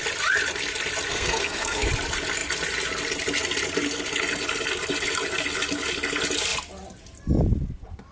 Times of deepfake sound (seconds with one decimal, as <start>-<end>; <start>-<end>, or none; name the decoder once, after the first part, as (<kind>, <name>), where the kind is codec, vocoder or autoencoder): 1.1-1.9 (codec, SNAC)